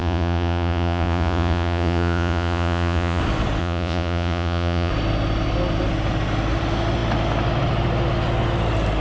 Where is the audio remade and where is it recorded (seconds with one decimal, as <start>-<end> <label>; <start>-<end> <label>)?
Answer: 0.0-3.2 remade; 3.2-3.6 recorded; 3.6-4.9 remade; 4.9-9.0 recorded